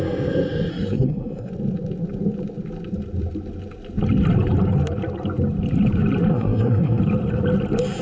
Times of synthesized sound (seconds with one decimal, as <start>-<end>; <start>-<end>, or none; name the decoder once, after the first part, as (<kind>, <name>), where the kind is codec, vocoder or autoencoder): 0.7-1.5 (codec, SNAC); 6.3-7.0